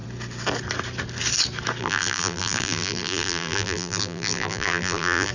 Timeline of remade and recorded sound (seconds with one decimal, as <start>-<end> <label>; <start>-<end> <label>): 0.0-1.8 recorded; 1.8-5.3 remade